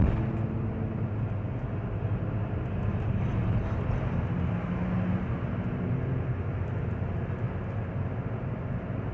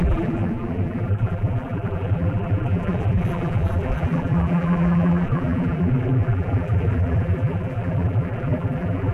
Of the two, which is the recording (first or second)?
first